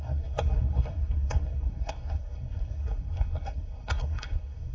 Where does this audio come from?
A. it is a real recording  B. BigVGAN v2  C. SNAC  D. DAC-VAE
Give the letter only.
C